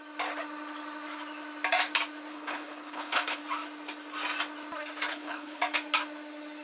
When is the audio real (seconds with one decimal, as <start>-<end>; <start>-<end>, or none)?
0.0-2.3; 3.4-5.1; 5.6-6.6